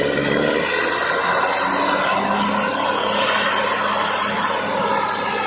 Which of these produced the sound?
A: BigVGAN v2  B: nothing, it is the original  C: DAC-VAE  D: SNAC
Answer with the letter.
B